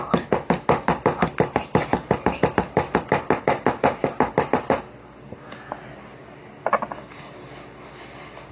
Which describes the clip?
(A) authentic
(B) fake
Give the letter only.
A